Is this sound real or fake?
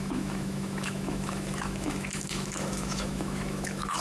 fake